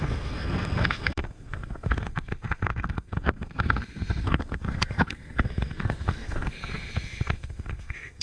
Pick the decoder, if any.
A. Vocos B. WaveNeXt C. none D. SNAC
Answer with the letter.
D